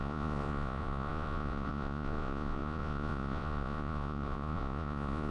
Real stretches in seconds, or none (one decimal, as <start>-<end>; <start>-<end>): none